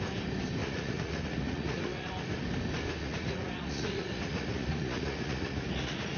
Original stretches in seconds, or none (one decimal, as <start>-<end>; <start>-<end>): 0.0-0.6; 2.1-3.0